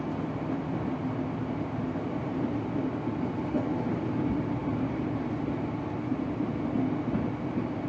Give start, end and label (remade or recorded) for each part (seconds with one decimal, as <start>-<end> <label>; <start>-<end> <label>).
0.0-4.6 recorded; 4.6-6.1 remade; 6.1-7.9 recorded